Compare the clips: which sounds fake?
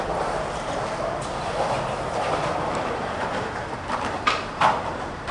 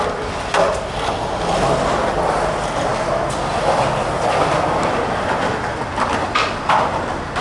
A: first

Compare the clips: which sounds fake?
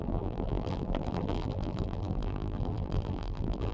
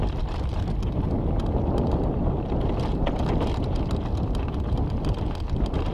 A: first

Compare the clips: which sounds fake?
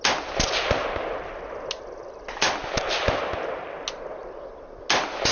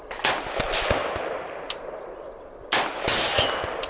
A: second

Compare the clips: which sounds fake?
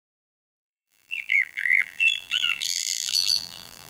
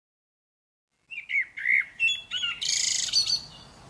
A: first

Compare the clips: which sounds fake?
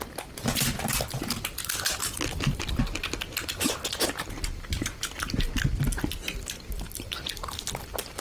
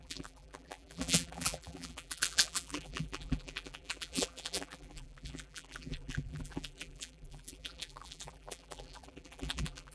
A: second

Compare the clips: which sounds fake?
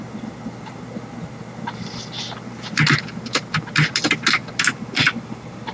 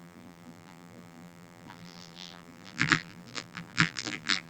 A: second